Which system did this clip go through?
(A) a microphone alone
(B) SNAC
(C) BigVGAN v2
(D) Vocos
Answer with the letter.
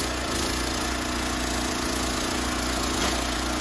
D